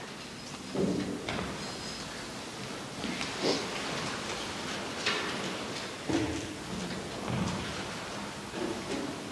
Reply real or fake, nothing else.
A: real